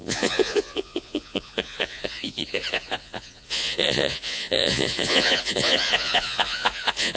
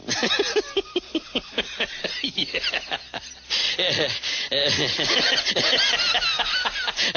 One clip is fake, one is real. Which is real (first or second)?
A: second